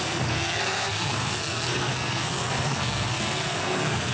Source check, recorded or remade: remade